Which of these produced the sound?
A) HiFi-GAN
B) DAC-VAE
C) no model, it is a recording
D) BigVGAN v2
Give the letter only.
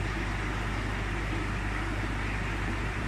D